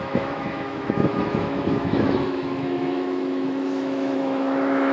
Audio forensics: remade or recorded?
remade